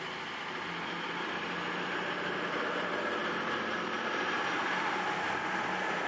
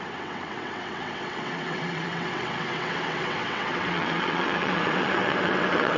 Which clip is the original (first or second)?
first